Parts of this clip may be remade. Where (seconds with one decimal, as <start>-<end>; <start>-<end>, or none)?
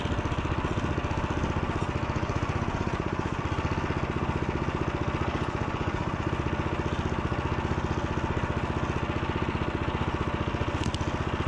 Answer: 2.0-3.4; 5.3-6.3